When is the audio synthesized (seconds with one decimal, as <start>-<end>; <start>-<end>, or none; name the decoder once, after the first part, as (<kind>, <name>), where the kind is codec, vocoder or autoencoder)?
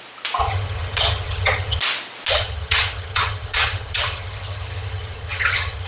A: 0.4-1.8 (vocoder, HiFi-GAN); 2.3-5.9